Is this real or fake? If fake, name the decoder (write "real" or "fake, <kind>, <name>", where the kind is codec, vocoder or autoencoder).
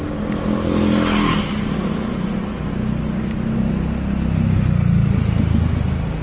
real